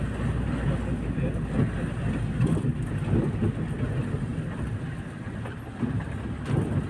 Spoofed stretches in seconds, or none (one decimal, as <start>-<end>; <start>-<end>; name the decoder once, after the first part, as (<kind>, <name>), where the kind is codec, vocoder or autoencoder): none